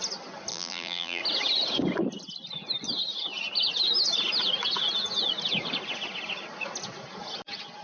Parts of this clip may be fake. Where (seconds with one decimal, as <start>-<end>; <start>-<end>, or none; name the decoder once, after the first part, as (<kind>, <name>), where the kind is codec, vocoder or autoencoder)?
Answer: 0.5-1.2 (vocoder, BigVGAN v2)